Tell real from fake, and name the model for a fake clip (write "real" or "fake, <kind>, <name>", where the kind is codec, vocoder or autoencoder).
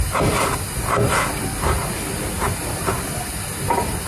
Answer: real